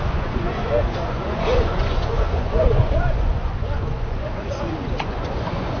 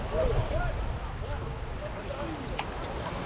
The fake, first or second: first